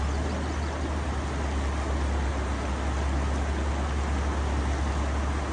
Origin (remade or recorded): recorded